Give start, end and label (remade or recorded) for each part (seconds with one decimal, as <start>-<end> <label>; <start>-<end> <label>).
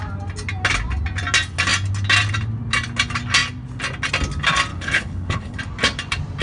0.0-4.7 recorded; 4.7-5.6 remade; 5.6-6.4 recorded